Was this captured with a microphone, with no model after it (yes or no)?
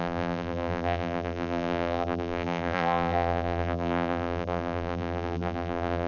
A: no